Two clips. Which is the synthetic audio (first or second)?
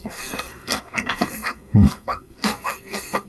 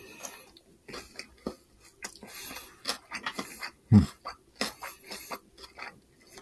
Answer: first